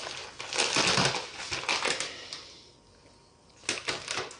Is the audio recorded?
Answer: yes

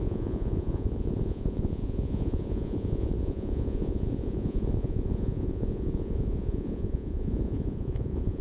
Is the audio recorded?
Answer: no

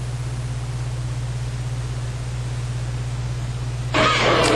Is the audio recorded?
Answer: yes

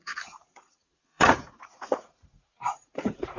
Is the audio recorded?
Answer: no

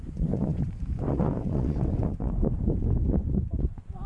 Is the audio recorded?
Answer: no